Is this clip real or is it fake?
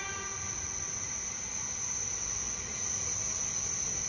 real